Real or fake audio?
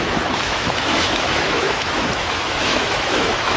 fake